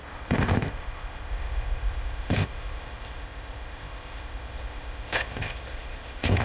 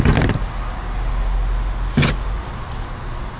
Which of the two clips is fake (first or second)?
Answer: first